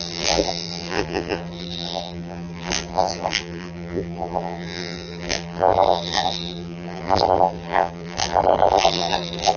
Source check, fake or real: fake